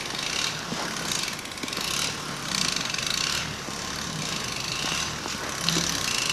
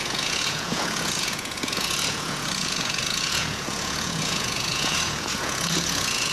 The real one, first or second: first